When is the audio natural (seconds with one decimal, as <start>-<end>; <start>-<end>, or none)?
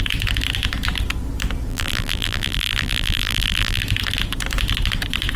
0.0-1.7; 3.8-5.4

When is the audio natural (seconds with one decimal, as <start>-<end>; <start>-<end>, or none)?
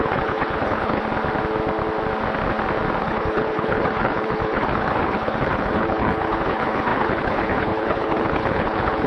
1.0-3.0